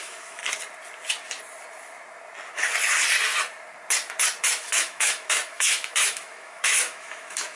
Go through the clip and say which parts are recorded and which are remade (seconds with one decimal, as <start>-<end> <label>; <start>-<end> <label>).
0.0-0.4 remade; 0.4-4.4 recorded; 4.4-7.6 remade